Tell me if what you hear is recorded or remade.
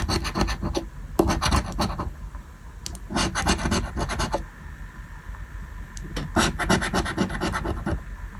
recorded